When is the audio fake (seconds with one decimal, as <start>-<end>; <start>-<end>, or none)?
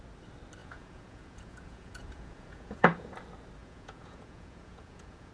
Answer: 0.6-3.1; 3.6-5.3